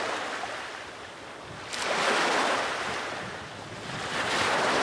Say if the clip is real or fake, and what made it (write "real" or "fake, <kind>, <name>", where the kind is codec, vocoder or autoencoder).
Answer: real